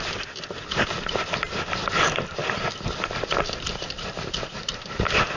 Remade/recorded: recorded